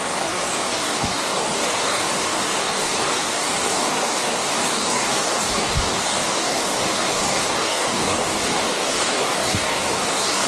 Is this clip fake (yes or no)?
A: yes